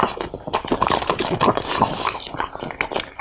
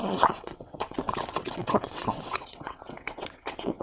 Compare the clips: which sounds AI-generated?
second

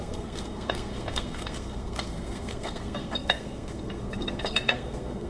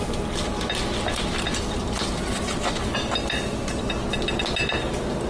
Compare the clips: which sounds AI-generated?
first